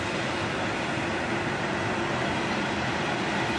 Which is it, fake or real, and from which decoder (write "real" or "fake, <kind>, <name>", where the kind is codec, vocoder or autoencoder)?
real